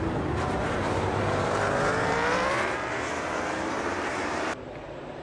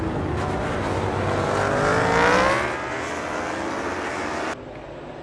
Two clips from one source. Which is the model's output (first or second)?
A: first